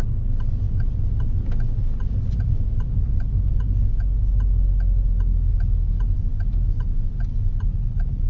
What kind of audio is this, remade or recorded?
recorded